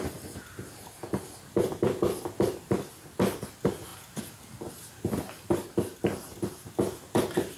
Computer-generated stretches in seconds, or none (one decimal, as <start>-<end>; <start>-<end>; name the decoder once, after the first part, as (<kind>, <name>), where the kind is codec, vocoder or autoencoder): none